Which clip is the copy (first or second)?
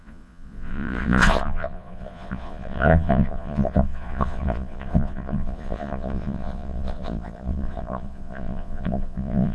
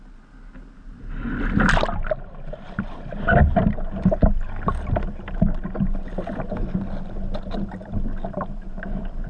first